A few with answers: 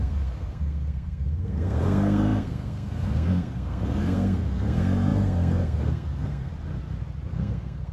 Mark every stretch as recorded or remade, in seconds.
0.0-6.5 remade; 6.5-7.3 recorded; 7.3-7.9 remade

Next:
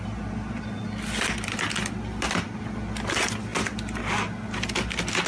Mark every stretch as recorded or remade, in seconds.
0.0-5.3 recorded

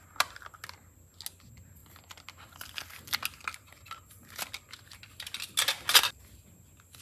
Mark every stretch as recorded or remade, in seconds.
0.0-7.0 recorded

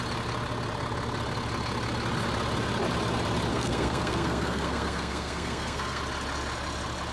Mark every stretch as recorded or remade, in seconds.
0.0-3.5 recorded; 3.5-6.0 remade; 6.0-7.1 recorded

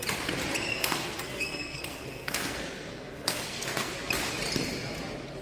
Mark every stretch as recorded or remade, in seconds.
0.0-0.7 recorded; 0.7-3.9 remade; 3.9-5.4 recorded

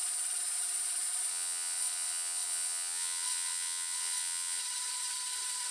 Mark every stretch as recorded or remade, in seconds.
0.0-1.3 recorded; 1.3-4.6 remade; 4.6-5.7 recorded

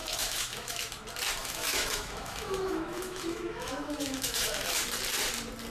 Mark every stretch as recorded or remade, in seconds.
0.0-0.8 remade; 0.8-1.4 recorded; 1.4-4.8 remade; 4.8-5.7 recorded

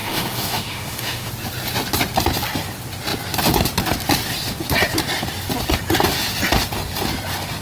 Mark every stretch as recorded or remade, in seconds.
0.0-1.3 remade; 1.3-7.6 recorded